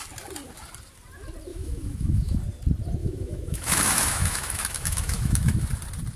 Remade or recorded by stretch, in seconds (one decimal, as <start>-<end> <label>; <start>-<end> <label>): 0.0-1.5 recorded; 1.5-2.4 remade; 2.4-3.0 recorded; 3.0-5.7 remade; 5.7-6.2 recorded